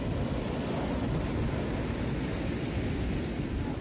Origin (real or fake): real